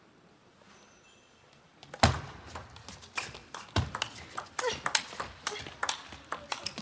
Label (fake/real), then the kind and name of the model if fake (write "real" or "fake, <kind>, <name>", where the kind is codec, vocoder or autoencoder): real